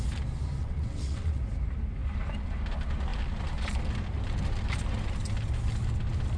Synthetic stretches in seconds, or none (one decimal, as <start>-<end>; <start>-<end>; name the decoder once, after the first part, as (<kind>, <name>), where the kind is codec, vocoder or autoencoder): 0.6-1.4 (vocoder, WaveNeXt)